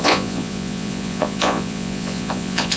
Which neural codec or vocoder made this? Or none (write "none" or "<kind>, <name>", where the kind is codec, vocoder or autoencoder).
vocoder, Vocos